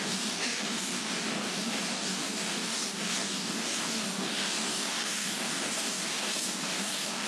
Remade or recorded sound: remade